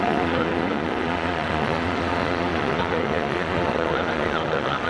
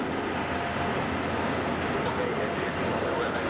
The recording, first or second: second